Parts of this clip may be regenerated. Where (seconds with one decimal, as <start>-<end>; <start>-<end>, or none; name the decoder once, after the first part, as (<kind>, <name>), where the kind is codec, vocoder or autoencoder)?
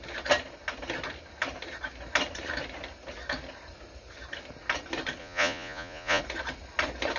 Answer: 5.2-6.2 (vocoder, Vocos)